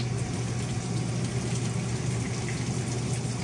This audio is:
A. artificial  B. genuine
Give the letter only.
B